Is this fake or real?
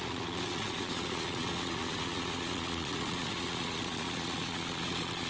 fake